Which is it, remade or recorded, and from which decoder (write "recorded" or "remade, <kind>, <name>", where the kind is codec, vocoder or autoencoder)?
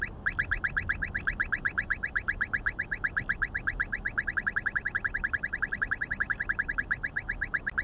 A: recorded